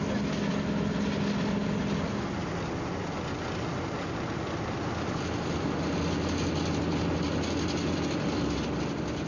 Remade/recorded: recorded